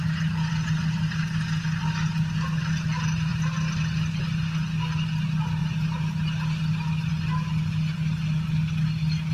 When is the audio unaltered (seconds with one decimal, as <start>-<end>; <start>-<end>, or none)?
0.0-9.3